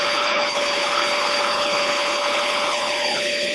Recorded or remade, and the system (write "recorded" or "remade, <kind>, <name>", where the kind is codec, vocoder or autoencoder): remade, codec, HILCodec